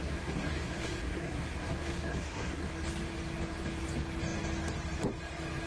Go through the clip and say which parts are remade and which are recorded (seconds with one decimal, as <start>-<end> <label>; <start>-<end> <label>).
0.0-2.7 remade; 2.7-5.7 recorded